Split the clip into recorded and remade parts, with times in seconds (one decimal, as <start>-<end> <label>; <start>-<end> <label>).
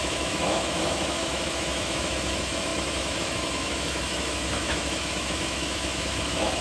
0.0-6.6 remade